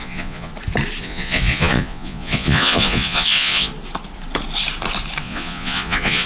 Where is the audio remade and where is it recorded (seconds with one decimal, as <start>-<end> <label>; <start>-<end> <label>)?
0.0-0.5 remade; 0.5-1.0 recorded; 1.0-3.7 remade; 3.7-5.2 recorded; 5.2-6.3 remade